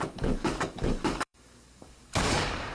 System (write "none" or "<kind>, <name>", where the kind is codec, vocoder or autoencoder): codec, DAC